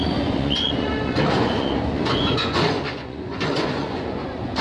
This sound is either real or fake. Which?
fake